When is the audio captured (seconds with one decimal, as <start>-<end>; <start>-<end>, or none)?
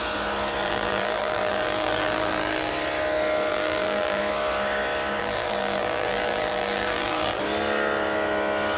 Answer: 0.0-0.6; 2.7-3.5; 4.2-5.2; 7.4-8.8